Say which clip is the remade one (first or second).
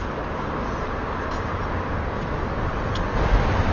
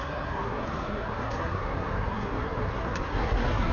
second